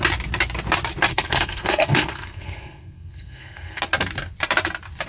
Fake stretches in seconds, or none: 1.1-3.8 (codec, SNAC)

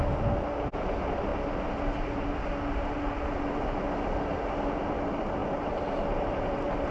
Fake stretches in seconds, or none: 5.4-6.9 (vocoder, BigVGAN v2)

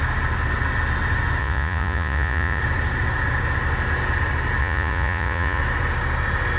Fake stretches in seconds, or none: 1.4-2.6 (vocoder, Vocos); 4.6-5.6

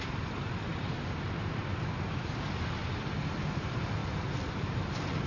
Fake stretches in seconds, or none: 0.0-1.6 (vocoder, BigVGAN v2); 2.1-2.8; 3.6-4.0; 4.5-5.3

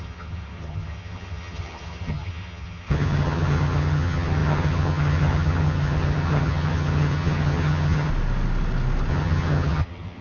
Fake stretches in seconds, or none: 0.0-8.1 (vocoder, HiFi-GAN); 9.1-10.2

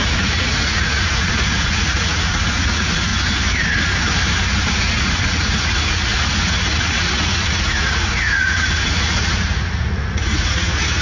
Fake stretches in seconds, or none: 0.0-3.1 (vocoder, Vocos); 4.7-11.0